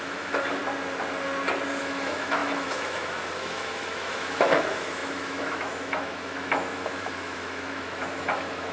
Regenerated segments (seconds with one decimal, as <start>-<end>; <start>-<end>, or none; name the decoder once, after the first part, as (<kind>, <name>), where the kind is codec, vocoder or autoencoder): 0.0-0.6 (autoencoder, DAC-VAE); 1.8-8.7